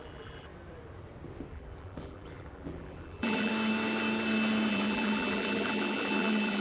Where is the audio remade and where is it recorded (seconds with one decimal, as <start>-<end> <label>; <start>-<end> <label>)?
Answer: 0.0-0.5 remade; 0.5-1.5 recorded; 1.5-3.5 remade; 3.5-4.7 recorded; 4.7-6.6 remade